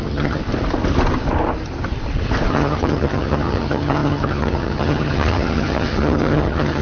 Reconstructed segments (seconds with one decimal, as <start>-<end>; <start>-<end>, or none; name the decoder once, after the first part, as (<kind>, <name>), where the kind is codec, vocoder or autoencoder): 0.0-0.4 (vocoder, HiFi-GAN); 2.5-6.8